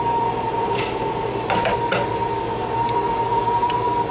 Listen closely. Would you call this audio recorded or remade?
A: recorded